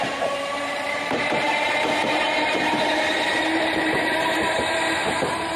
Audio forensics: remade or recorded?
remade